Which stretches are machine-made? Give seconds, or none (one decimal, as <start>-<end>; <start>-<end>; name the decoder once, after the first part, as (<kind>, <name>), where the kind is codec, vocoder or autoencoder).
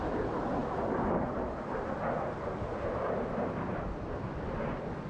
none